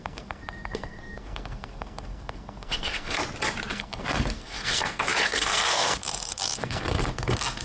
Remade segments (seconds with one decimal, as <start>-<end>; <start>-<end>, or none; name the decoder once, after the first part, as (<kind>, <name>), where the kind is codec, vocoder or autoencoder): 0.0-3.2 (codec, SNAC); 3.7-7.6